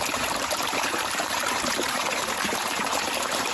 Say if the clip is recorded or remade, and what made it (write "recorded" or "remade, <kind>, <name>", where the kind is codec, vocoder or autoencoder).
remade, vocoder, BigVGAN v2